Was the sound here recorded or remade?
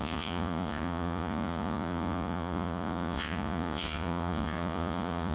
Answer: remade